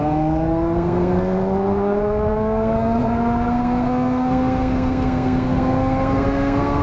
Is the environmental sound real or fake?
fake